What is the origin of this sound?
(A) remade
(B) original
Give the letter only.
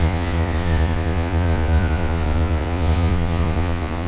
A